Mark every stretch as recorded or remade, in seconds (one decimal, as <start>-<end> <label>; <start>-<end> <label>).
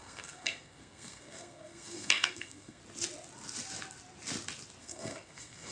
0.0-2.8 remade; 2.8-4.8 recorded; 4.8-5.7 remade